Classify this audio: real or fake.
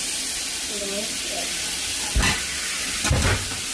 real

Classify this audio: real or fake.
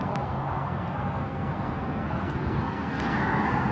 fake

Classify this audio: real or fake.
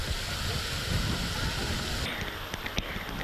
real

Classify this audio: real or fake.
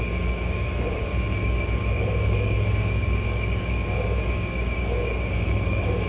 fake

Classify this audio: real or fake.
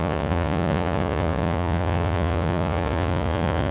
fake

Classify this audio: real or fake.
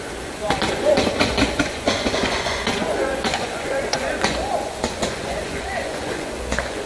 fake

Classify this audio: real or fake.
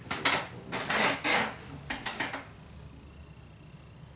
real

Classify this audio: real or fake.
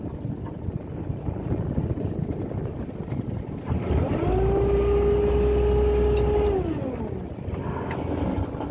real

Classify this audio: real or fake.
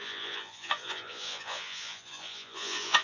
fake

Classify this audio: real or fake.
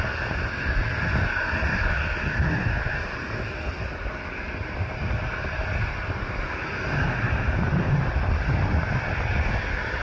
real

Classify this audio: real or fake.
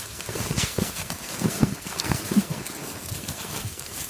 fake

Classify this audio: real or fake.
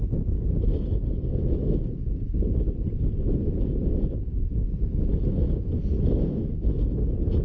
real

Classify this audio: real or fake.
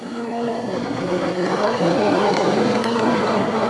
fake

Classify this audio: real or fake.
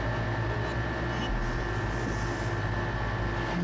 real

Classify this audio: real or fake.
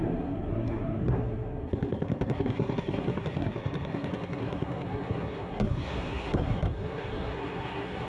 fake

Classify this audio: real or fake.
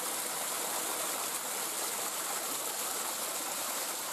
real